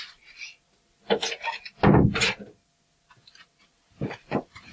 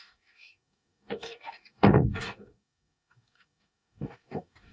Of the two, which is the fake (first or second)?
second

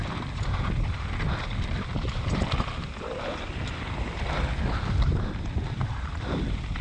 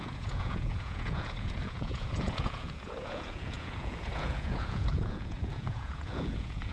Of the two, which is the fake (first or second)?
second